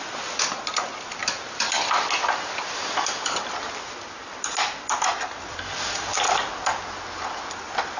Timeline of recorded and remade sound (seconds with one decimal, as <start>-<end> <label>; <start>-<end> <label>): 0.0-8.0 recorded